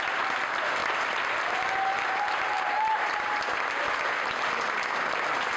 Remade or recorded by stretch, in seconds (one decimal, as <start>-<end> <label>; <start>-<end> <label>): 0.0-5.6 recorded